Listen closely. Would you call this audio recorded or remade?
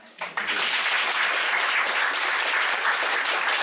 recorded